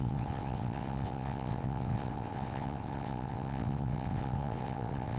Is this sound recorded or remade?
remade